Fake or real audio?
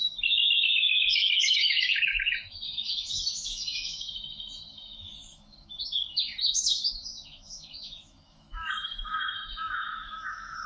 fake